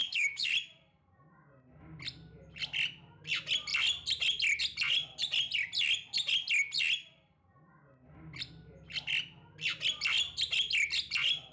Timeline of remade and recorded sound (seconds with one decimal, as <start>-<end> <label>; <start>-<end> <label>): 0.0-0.5 remade; 0.5-11.5 recorded